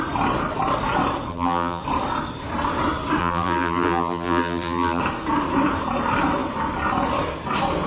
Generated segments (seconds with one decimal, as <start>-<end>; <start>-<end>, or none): 1.3-1.8; 3.2-5.0